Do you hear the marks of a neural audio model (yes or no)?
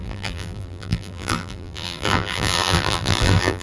yes